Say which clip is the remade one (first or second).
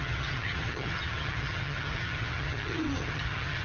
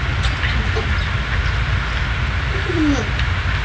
first